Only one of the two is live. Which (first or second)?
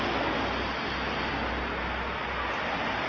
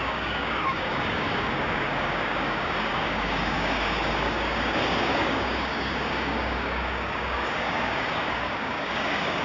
first